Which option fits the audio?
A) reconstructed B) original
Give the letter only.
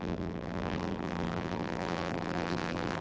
A